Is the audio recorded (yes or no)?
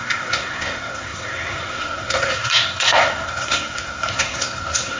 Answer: no